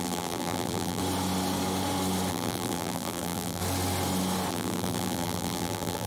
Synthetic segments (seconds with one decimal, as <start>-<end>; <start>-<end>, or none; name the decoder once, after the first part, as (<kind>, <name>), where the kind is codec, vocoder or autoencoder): 0.0-1.0 (vocoder, BigVGAN v2); 2.3-3.6; 4.5-6.1